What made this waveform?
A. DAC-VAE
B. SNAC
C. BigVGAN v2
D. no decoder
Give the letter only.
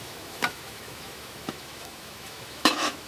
A